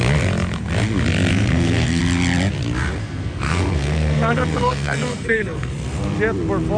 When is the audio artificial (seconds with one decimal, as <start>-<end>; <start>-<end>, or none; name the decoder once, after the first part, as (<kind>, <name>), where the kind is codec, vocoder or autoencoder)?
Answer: 1.3-2.0 (codec, SNAC); 3.0-5.7